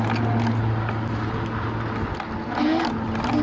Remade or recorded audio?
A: recorded